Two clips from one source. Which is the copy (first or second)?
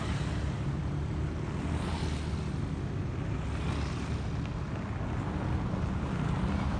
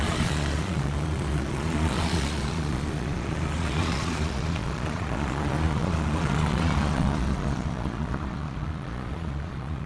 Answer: second